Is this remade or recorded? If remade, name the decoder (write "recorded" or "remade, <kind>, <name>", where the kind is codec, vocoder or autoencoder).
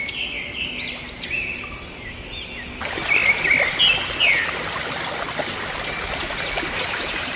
recorded